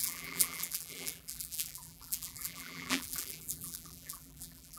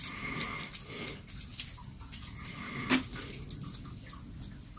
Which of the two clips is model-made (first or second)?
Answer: first